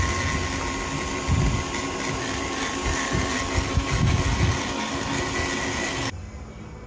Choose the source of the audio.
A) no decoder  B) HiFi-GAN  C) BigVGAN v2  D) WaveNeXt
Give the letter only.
A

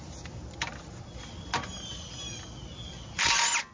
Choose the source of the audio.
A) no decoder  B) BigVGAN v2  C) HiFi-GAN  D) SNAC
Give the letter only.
A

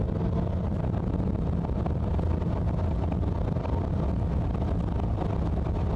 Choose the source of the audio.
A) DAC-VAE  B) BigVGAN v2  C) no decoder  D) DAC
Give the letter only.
C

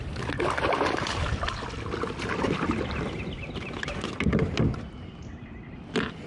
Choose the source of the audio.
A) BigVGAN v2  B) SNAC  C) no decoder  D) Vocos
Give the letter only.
A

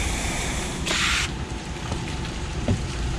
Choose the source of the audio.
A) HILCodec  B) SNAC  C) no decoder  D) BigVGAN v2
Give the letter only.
D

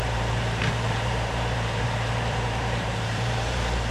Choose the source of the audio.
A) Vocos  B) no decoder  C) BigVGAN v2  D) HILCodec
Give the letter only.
C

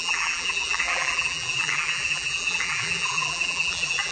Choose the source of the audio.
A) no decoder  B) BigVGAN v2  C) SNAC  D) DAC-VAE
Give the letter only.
B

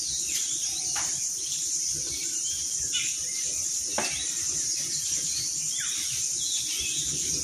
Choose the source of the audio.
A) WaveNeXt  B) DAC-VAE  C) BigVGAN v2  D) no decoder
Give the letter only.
C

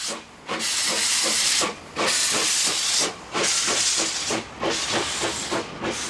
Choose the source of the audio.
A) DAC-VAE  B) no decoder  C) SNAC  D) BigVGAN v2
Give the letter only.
B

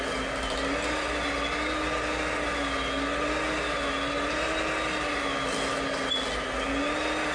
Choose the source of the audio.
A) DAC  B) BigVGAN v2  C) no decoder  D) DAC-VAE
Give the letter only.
C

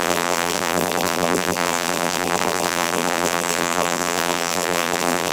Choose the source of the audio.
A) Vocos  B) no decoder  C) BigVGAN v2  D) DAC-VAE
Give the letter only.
C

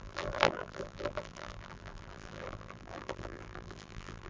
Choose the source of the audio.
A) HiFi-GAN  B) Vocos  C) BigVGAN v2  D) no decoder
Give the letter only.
C